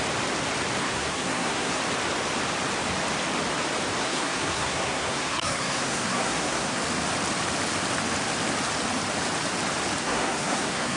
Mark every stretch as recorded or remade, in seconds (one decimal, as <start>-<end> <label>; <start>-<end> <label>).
0.0-0.8 recorded; 0.8-1.8 remade; 1.8-4.0 recorded; 4.0-6.8 remade; 6.8-10.0 recorded; 10.0-11.0 remade